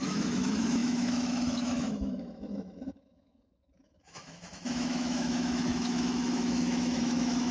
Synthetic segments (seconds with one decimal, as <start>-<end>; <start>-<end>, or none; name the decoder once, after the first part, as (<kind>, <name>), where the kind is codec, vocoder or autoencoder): 0.0-7.5 (autoencoder, DAC-VAE)